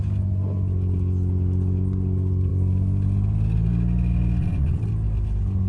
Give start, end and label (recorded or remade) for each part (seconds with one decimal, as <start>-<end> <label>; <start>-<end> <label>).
0.0-4.4 recorded; 4.4-4.9 remade; 4.9-5.7 recorded